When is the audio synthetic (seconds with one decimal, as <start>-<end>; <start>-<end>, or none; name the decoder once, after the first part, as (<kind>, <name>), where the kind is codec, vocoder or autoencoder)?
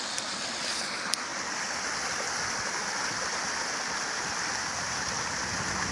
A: none